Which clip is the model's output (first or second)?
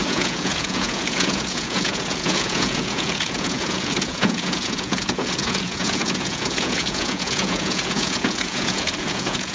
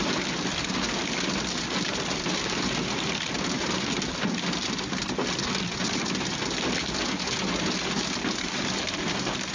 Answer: first